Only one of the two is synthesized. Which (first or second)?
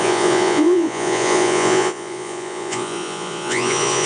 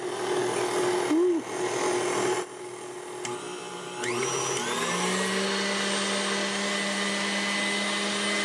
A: first